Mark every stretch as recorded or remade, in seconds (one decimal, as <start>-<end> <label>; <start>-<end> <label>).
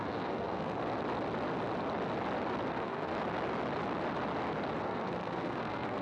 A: 0.0-0.8 remade; 0.8-2.7 recorded; 2.7-3.1 remade; 3.1-4.8 recorded; 4.8-6.0 remade